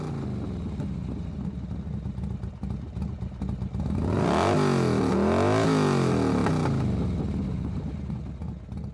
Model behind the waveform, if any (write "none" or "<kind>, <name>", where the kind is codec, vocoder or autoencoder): none